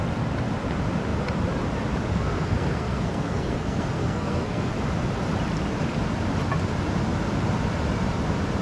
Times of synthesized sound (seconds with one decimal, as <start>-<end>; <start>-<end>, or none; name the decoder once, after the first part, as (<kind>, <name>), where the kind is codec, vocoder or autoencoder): 2.1-4.7 (codec, SNAC)